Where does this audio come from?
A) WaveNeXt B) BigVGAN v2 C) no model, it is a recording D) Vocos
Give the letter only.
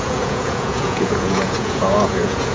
D